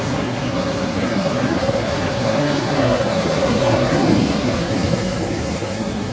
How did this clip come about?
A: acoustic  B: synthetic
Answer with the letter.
B